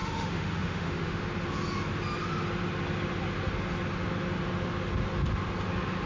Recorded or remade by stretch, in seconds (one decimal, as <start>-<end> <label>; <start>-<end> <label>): 0.0-1.2 remade; 1.2-6.1 recorded